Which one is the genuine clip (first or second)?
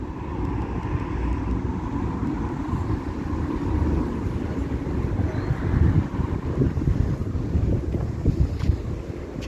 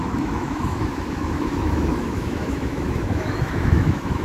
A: first